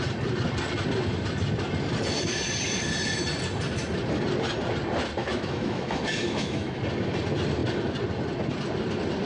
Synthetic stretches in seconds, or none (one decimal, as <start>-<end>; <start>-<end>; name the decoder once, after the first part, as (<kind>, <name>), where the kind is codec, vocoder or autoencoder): 5.2-6.8 (autoencoder, DAC-VAE)